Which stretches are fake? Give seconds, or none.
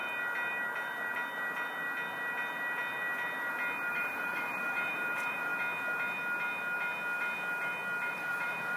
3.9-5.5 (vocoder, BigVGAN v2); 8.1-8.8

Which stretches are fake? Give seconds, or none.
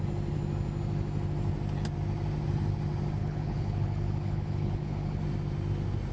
3.2-5.2 (codec, HILCodec)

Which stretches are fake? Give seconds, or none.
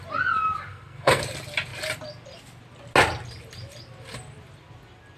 0.7-1.2 (codec, SNAC)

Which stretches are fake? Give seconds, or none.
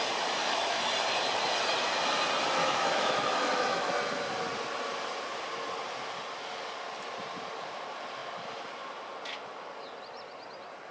0.4-0.9 (autoencoder, DAC-VAE); 2.6-3.9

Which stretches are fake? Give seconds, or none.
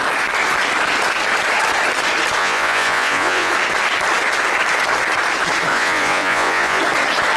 2.4-3.5 (vocoder, Vocos); 5.7-6.8